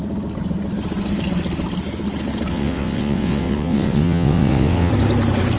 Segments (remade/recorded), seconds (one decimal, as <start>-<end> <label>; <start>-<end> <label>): 0.0-2.5 recorded; 2.5-4.9 remade; 4.9-5.6 recorded